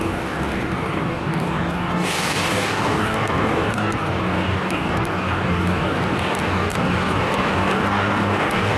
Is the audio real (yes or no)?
no